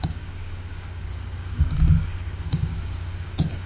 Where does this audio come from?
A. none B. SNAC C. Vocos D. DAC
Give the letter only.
D